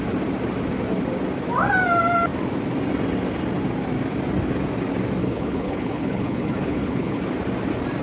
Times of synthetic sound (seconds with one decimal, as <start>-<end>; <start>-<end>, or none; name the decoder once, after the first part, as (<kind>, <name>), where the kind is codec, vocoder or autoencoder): 5.2-7.2 (codec, HILCodec)